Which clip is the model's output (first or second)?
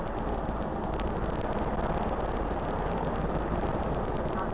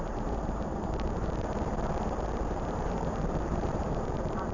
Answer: second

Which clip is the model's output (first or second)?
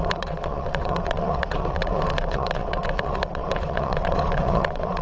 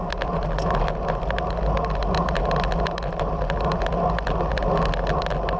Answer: first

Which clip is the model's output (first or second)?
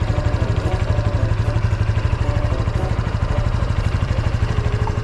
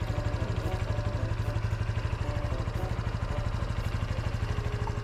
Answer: first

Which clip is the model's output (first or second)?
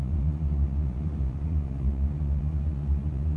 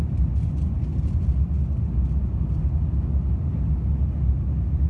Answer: first